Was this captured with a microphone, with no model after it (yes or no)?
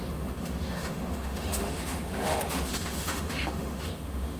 no